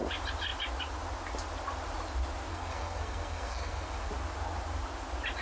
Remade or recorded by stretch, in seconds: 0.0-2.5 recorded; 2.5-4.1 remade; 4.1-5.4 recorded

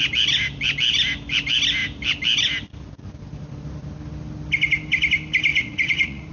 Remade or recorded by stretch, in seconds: 0.0-5.5 recorded; 5.5-6.3 remade

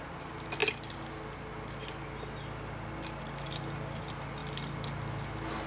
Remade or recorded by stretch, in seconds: 0.0-5.7 recorded